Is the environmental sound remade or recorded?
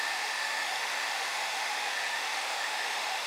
remade